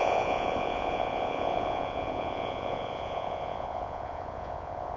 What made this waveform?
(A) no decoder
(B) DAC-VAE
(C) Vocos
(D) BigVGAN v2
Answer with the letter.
C